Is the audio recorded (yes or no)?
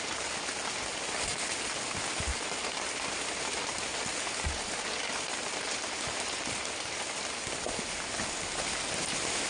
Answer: yes